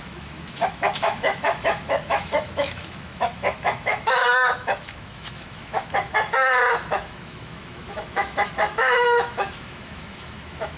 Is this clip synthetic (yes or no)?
yes